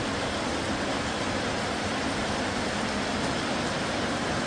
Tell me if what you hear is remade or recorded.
recorded